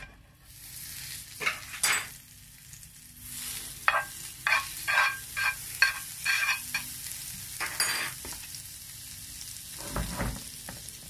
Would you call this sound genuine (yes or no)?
yes